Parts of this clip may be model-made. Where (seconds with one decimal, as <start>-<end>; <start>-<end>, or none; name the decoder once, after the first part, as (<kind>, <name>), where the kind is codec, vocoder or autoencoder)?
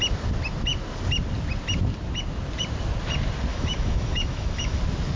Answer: 3.5-4.8 (autoencoder, DAC-VAE)